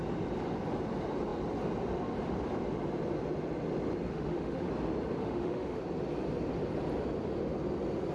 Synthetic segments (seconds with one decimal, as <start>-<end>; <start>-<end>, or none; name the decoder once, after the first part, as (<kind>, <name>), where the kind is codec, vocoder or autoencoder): 4.1-4.7 (autoencoder, DAC-VAE); 5.2-5.8